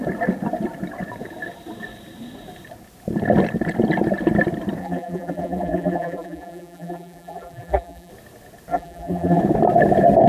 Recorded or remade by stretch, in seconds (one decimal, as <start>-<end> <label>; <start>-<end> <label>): 0.0-4.8 recorded; 4.8-8.1 remade; 8.1-8.7 recorded; 8.7-9.4 remade; 9.4-10.3 recorded